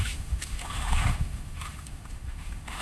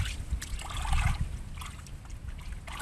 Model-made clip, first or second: first